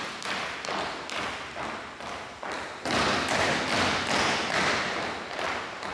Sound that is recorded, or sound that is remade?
recorded